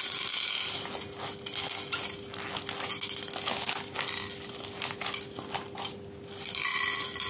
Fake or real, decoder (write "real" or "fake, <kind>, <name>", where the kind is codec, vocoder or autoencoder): real